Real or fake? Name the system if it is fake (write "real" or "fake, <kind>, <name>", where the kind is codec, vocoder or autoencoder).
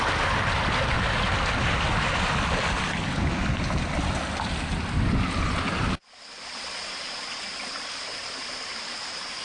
real